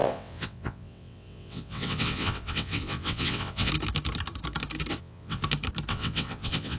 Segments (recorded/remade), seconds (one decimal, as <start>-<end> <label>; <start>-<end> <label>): 0.0-3.7 remade; 3.7-4.9 recorded; 4.9-5.4 remade; 5.4-5.9 recorded; 5.9-6.8 remade